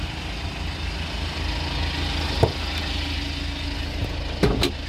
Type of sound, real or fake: real